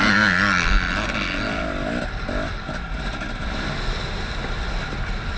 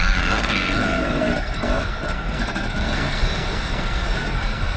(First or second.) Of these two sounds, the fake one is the second